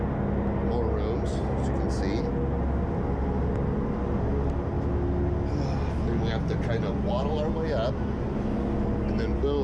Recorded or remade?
recorded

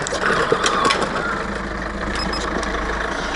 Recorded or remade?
recorded